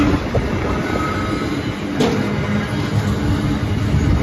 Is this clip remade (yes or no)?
no